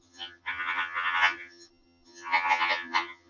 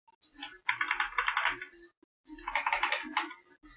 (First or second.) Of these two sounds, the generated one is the first